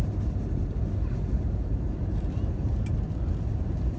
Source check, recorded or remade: remade